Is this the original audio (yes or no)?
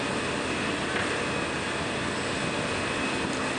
yes